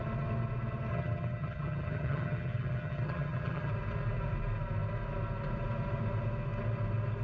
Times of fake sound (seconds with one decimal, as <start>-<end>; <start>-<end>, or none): 0.9-3.7